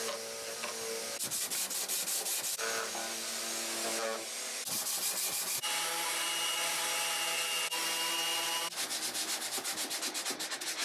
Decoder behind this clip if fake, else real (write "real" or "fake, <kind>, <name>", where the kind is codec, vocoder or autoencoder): real